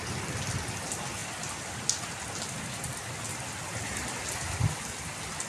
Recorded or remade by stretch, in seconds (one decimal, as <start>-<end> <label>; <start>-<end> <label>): 0.0-5.5 recorded

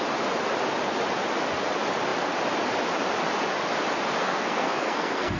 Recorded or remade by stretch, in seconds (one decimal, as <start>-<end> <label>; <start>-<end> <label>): 0.0-4.2 recorded; 4.2-5.4 remade

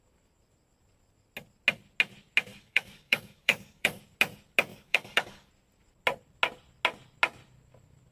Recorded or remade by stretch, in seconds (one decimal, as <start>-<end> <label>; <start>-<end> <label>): 0.0-2.5 recorded; 2.5-4.0 remade; 4.0-4.7 recorded; 4.7-5.5 remade; 5.5-8.1 recorded

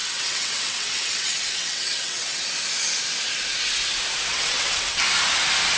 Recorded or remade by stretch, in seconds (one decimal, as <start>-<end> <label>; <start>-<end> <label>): 0.0-2.4 remade; 2.4-4.3 recorded; 4.3-5.0 remade; 5.0-5.8 recorded

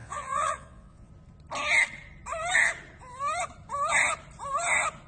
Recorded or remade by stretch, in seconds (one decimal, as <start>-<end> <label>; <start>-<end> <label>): 0.0-1.1 remade; 1.1-5.1 recorded